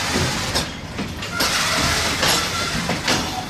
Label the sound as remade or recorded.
recorded